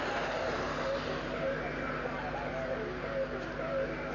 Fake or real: real